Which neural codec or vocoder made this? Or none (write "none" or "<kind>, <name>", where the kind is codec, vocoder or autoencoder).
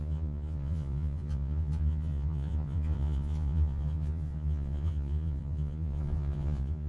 vocoder, Vocos